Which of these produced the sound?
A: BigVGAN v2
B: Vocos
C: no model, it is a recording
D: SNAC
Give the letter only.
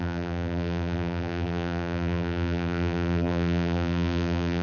A